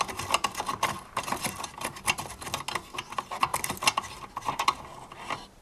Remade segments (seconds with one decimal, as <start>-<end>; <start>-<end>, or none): none